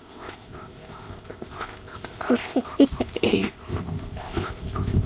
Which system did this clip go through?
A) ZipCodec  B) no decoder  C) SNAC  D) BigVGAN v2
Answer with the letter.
A